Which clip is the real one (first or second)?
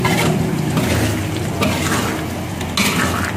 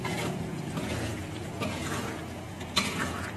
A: first